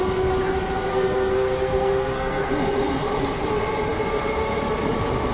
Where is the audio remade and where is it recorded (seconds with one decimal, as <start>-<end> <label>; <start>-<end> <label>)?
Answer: 0.0-0.9 recorded; 0.9-2.5 remade; 2.5-5.3 recorded